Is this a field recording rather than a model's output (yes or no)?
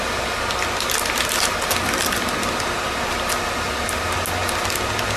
yes